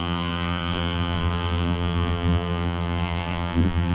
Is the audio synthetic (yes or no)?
yes